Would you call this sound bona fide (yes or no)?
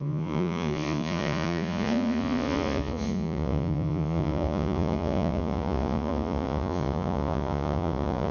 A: no